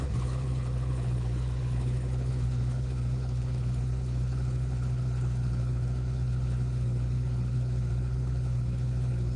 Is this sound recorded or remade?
remade